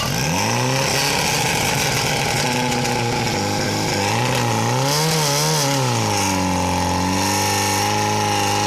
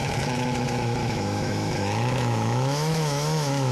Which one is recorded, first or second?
first